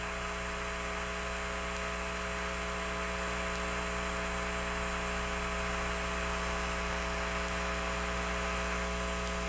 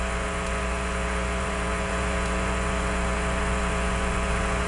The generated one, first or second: second